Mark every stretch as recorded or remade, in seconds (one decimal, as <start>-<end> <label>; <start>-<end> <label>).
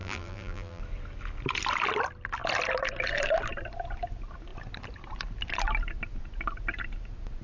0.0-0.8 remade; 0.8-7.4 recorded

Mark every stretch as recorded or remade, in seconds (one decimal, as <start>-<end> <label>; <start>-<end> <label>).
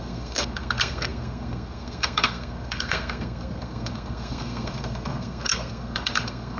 0.0-6.6 remade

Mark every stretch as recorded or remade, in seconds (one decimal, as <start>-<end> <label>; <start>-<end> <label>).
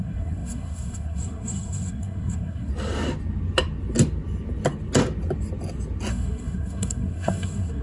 0.0-2.7 remade; 2.7-6.1 recorded; 6.1-7.8 remade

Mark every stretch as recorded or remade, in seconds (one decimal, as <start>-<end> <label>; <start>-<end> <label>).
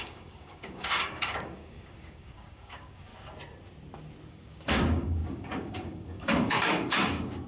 0.0-3.1 remade; 3.1-4.3 recorded; 4.3-7.5 remade